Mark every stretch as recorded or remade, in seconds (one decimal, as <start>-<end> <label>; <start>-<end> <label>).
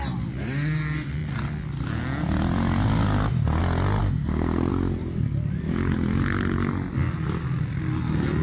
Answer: 0.0-4.0 recorded; 4.0-4.7 remade; 4.7-8.4 recorded